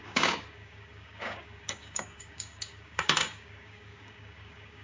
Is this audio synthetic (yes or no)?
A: yes